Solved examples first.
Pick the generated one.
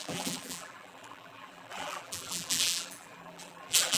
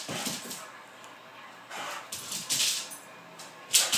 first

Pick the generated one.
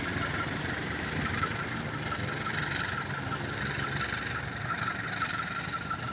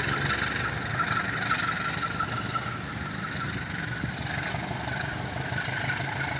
first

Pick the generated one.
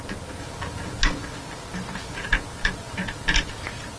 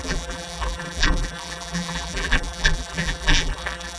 second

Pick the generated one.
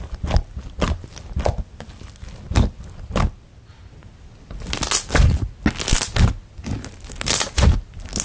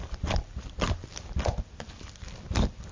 second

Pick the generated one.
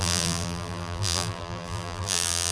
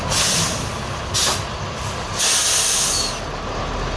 first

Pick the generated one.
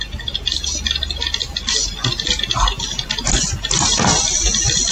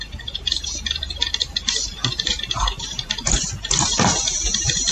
second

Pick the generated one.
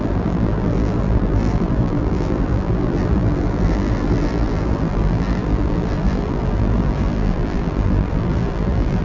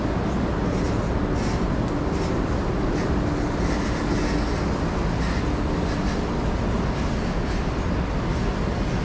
first